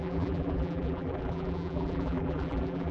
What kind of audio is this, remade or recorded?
remade